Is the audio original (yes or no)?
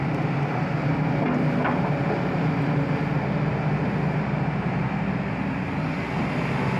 yes